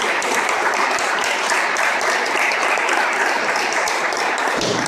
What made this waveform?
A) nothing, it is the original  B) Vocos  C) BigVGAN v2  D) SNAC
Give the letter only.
C